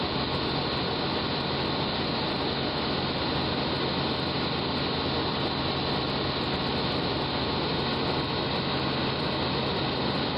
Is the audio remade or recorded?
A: recorded